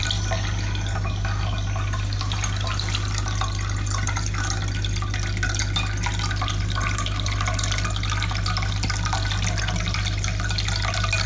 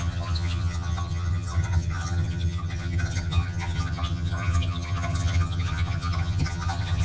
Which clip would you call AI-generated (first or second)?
second